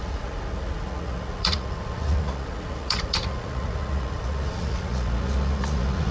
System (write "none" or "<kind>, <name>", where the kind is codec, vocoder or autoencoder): vocoder, Vocos